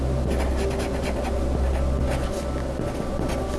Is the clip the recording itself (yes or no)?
yes